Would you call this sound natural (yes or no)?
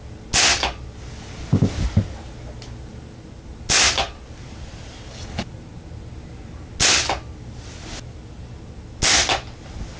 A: yes